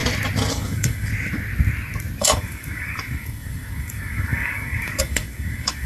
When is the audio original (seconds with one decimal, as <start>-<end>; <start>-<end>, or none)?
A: 0.0-0.5; 1.1-2.2

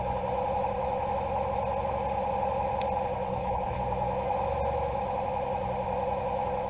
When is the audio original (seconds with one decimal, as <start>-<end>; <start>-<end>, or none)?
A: 0.0-3.3; 3.8-6.7

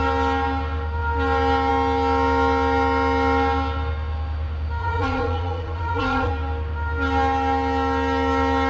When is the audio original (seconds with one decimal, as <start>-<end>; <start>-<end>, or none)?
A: 0.0-4.8; 6.3-8.7

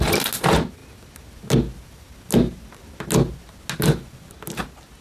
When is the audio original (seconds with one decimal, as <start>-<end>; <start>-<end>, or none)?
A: 0.0-5.0

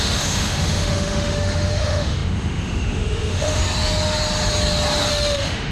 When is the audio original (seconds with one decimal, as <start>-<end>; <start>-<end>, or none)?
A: 3.6-5.1

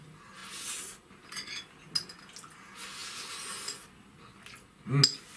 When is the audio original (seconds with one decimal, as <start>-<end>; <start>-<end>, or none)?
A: 0.0-5.4